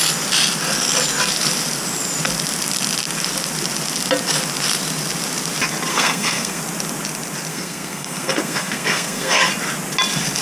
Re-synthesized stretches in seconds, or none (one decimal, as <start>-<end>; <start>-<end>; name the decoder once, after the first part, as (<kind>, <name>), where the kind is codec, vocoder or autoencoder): 5.9-6.6 (codec, SNAC); 7.5-9.5